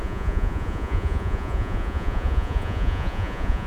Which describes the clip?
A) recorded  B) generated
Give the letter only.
B